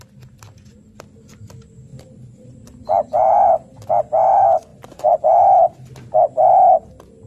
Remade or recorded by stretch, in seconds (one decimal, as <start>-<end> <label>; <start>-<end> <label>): 0.0-1.9 recorded; 1.9-3.5 remade; 3.5-4.7 recorded; 4.7-5.2 remade; 5.2-7.3 recorded